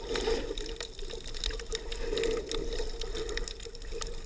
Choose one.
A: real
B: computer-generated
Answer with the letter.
A